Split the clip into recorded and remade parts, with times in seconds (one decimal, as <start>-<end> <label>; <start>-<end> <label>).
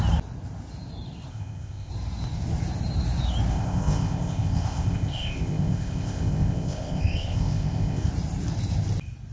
0.0-1.3 recorded; 1.3-1.9 remade; 1.9-3.5 recorded; 3.5-8.1 remade; 8.1-9.3 recorded